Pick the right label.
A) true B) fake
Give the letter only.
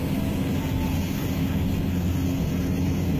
A